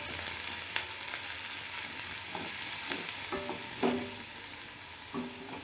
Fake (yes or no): no